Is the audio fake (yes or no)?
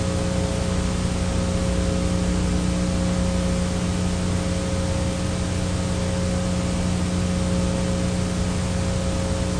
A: no